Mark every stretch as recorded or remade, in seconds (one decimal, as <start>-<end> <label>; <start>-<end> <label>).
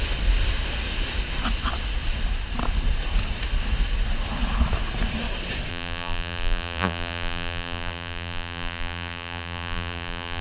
0.0-5.7 recorded; 5.7-10.4 remade